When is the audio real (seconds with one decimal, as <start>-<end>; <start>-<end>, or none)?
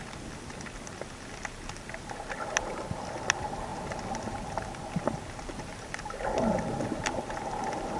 0.0-8.0